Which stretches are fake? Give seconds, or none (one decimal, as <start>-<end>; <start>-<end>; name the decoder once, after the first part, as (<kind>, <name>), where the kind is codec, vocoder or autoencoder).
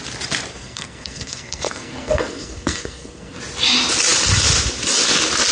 0.5-3.4 (codec, SNAC)